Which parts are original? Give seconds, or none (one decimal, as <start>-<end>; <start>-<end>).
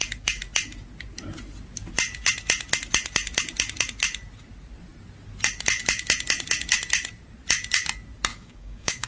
0.0-8.3